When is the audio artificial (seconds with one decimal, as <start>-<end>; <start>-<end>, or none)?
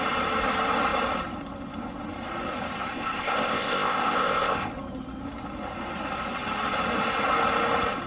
2.9-4.7